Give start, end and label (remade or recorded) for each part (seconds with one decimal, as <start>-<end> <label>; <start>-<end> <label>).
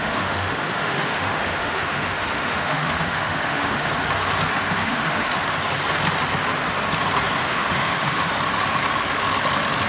0.0-3.9 remade; 3.9-4.8 recorded; 4.8-5.3 remade; 5.3-7.4 recorded; 7.4-8.3 remade; 8.3-9.9 recorded